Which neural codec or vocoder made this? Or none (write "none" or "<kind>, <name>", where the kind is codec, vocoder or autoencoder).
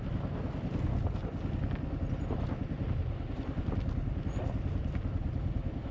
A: none